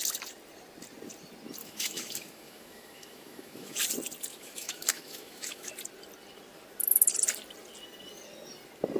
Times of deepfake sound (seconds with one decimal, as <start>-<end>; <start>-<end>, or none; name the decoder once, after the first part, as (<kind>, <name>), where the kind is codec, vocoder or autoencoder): 1.6-3.8 (autoencoder, DAC-VAE); 4.3-5.7